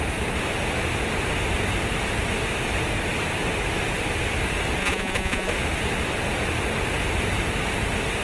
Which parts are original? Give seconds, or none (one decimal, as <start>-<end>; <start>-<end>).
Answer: 0.0-4.8; 5.5-8.2